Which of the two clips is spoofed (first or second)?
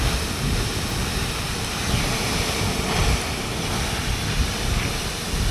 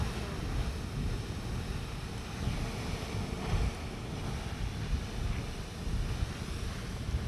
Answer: first